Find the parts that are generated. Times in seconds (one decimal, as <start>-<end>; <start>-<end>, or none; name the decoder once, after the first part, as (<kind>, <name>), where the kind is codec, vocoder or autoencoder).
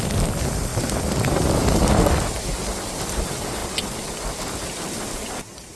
none